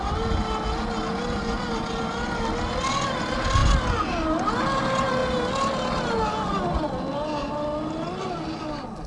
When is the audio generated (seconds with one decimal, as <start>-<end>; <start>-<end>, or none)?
none